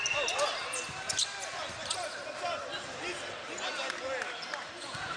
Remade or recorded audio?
recorded